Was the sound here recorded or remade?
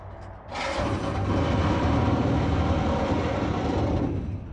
recorded